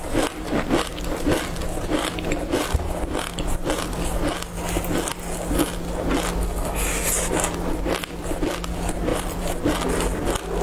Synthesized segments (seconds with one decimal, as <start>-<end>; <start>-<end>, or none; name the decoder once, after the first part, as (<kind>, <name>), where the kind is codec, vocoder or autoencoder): 9.1-9.7 (vocoder, BigVGAN v2)